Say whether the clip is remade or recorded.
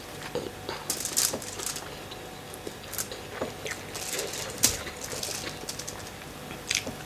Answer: recorded